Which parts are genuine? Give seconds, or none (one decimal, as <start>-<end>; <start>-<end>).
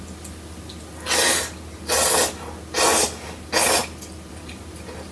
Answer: 0.0-5.1